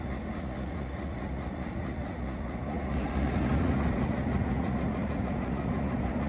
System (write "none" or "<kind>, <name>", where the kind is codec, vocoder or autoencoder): vocoder, Vocos